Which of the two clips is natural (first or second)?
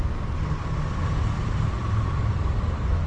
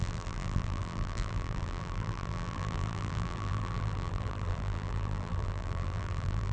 first